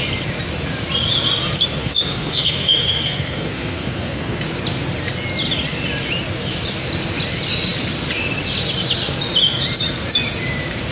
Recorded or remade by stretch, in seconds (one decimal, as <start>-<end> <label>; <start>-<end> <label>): 0.0-1.8 recorded; 1.8-4.4 remade; 4.4-10.9 recorded